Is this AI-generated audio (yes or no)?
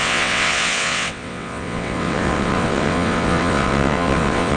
yes